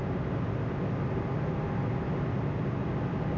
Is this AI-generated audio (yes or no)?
no